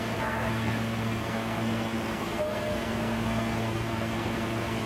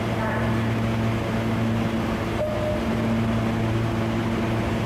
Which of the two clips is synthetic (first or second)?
first